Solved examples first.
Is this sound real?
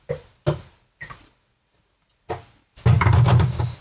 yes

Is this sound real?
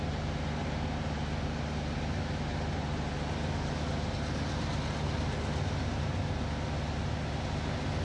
yes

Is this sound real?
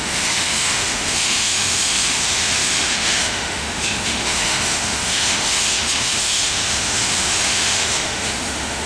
no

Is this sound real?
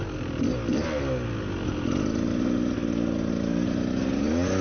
yes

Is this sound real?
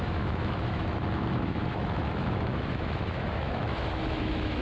no